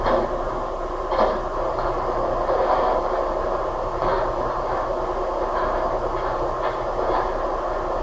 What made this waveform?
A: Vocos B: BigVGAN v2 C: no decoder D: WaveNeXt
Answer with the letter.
C